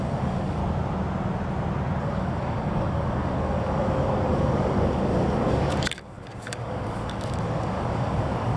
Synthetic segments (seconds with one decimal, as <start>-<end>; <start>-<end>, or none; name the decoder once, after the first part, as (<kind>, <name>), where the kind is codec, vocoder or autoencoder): 0.0-0.6 (codec, DAC); 2.0-8.6